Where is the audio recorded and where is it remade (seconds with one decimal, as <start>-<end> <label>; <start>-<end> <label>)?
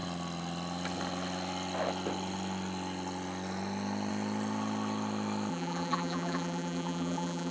0.0-5.5 recorded; 5.5-7.5 remade